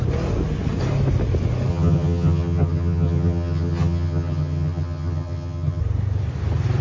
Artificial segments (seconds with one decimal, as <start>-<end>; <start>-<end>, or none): 1.7-5.8